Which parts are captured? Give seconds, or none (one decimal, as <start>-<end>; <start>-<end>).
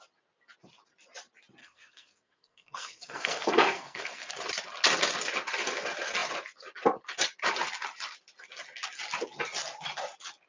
0.0-1.6; 4.3-10.5